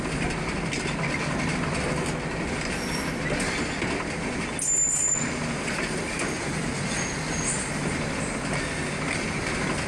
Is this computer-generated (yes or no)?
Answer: no